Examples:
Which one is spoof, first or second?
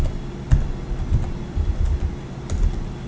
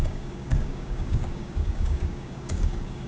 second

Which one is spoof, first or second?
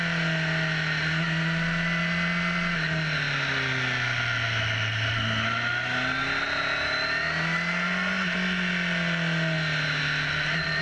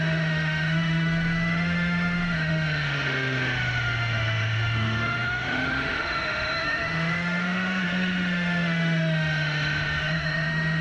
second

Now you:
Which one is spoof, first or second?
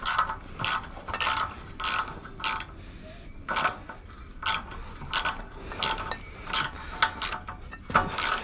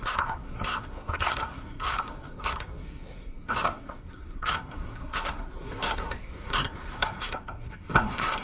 second